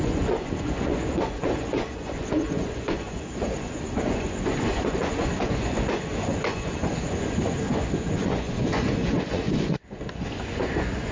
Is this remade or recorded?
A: remade